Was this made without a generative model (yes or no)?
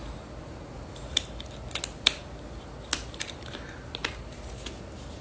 yes